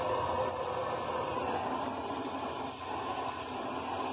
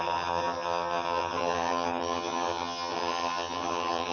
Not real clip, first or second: second